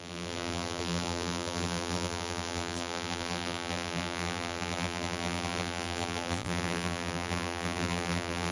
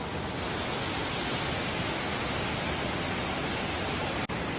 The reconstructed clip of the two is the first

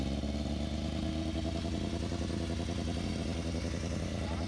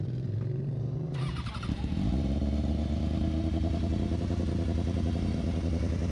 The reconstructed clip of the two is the second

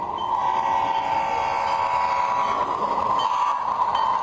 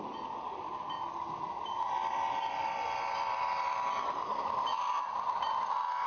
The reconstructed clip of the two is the second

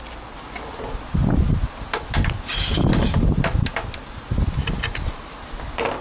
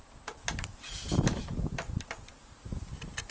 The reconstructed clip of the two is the second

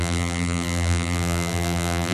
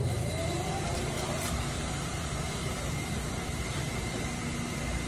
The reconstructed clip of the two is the first